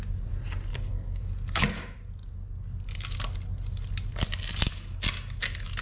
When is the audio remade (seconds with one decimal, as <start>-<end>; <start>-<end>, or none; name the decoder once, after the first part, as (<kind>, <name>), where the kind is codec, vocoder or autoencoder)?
0.7-1.2 (codec, SNAC)